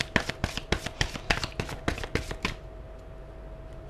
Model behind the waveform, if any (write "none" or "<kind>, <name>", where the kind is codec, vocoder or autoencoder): none